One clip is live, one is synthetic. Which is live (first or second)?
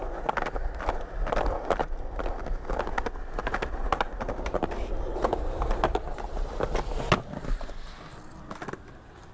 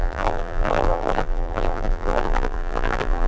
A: first